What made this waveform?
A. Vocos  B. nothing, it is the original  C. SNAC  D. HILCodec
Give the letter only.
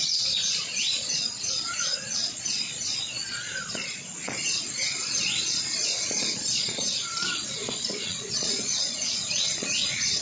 A